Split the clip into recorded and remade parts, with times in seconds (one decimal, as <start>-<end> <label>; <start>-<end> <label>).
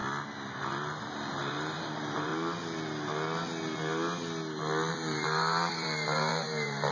0.0-0.6 recorded; 0.6-2.3 remade; 2.3-4.9 recorded; 4.9-6.9 remade